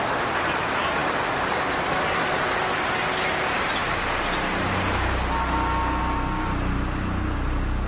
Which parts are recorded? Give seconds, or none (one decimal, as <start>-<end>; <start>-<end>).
0.0-7.9